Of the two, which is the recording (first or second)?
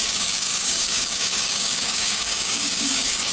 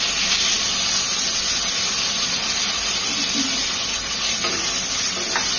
second